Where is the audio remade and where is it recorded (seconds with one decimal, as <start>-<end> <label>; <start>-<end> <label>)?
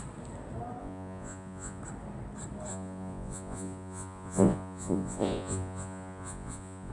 0.0-0.8 recorded; 0.8-1.8 remade; 1.8-2.7 recorded; 2.7-6.9 remade